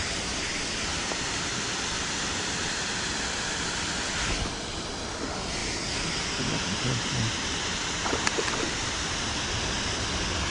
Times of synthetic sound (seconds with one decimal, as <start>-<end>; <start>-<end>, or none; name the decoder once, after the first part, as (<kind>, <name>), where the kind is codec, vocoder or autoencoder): none